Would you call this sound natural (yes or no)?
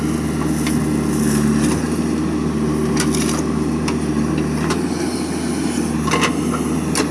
yes